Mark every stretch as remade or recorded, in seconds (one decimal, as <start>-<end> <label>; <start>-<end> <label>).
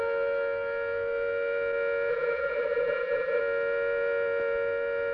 0.0-2.1 recorded; 2.1-3.4 remade; 3.4-5.1 recorded